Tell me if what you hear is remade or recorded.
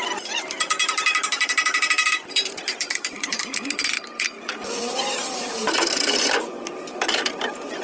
remade